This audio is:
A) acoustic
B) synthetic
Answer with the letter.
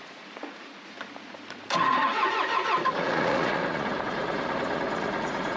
B